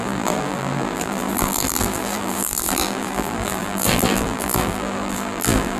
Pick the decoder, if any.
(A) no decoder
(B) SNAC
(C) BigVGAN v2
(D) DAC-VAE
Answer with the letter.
C